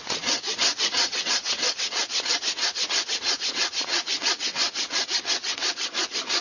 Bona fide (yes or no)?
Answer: no